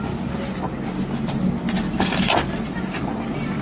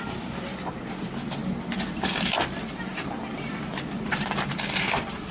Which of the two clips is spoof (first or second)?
second